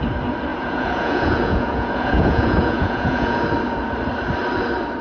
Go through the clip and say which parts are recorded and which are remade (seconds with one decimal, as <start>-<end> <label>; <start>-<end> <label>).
0.0-0.5 recorded; 0.5-3.4 remade; 3.4-5.0 recorded